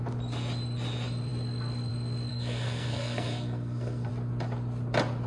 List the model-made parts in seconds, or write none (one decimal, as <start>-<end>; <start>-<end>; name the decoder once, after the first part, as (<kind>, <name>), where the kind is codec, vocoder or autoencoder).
2.3-4.1 (codec, SNAC)